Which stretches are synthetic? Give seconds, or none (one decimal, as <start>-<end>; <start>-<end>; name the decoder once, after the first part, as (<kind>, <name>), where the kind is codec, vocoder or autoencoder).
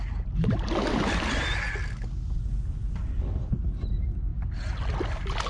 none